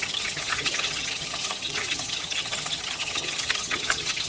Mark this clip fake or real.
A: fake